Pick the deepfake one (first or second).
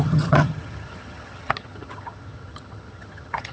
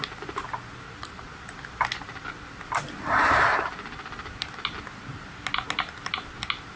first